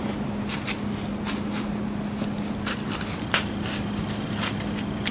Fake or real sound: real